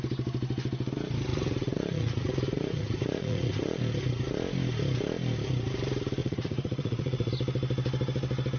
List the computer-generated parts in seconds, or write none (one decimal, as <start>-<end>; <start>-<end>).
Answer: 1.3-3.8; 6.2-7.3